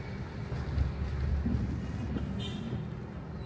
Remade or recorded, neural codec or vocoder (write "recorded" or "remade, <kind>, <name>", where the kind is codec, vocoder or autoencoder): recorded